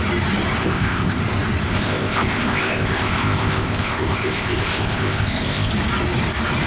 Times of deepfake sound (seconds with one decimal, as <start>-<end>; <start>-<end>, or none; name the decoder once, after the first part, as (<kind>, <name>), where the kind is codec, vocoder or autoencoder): 0.6-1.2 (codec, ZipCodec); 1.7-5.7